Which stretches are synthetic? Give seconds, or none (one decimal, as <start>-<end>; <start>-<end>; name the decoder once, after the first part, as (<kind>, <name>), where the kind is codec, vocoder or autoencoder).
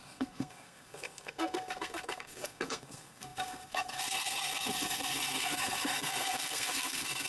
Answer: 0.0-7.3 (codec, SNAC)